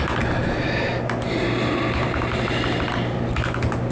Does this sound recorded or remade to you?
recorded